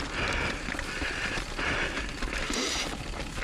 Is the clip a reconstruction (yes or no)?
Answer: yes